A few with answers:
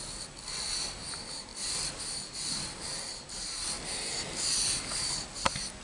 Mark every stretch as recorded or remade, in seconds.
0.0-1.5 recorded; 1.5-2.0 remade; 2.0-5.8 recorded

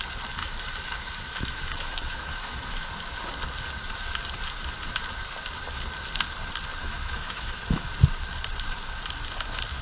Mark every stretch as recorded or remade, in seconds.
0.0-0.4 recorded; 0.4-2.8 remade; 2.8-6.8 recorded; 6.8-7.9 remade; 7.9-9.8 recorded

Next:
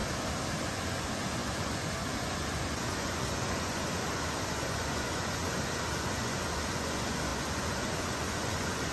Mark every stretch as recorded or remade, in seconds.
0.0-0.6 recorded; 0.6-8.9 remade